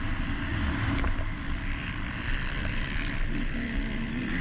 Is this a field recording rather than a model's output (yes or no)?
yes